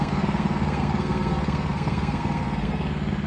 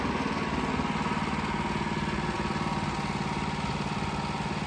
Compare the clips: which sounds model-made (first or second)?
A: first